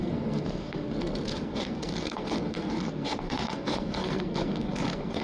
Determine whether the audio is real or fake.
fake